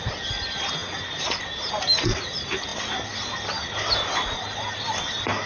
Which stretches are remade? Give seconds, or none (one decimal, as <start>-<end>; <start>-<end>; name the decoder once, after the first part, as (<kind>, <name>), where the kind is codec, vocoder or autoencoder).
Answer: none